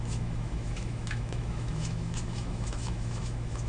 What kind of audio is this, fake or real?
fake